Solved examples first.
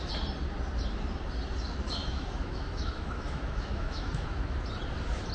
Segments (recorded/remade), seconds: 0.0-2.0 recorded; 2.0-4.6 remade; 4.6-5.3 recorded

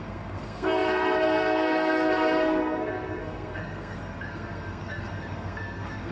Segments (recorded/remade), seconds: 0.0-6.1 remade

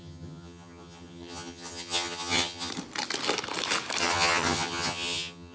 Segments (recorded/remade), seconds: 0.0-2.7 remade; 2.7-4.0 recorded; 4.0-5.5 remade

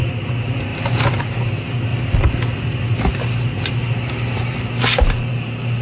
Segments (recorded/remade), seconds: 0.0-5.8 recorded